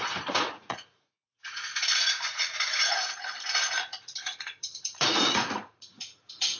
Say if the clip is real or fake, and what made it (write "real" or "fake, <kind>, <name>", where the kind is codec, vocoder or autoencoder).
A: fake, vocoder, Vocos